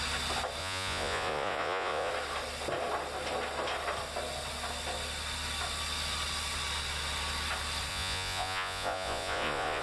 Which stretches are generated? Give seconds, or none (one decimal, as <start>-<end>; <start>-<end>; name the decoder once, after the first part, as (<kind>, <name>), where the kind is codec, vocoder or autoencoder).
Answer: 0.6-2.1 (vocoder, Vocos); 7.9-9.8